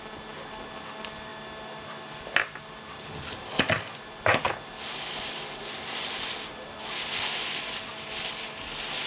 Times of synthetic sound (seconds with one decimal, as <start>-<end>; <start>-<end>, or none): none